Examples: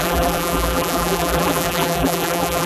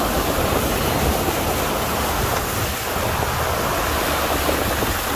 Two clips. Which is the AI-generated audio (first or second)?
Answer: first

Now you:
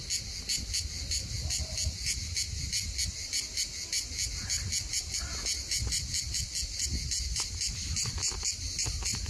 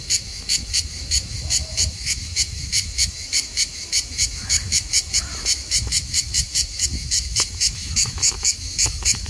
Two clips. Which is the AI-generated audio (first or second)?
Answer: second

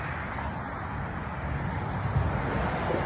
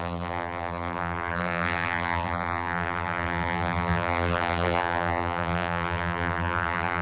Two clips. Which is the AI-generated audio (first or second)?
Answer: second